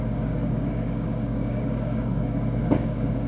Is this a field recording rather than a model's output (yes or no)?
no